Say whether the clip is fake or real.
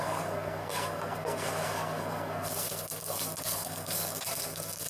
fake